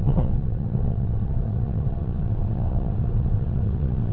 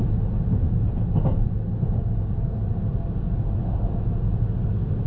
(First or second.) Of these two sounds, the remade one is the first